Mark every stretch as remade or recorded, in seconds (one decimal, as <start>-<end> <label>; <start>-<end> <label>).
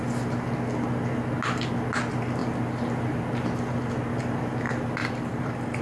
0.0-5.0 recorded; 5.0-5.8 remade